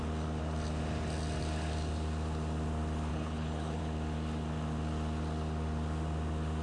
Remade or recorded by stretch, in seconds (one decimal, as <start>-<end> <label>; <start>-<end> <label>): 0.0-3.1 recorded; 3.1-3.8 remade; 3.8-6.6 recorded